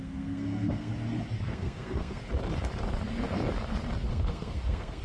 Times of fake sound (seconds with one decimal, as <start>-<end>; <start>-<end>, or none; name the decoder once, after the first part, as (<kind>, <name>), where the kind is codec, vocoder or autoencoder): 0.0-0.9 (codec, SNAC); 1.5-2.2; 4.1-5.0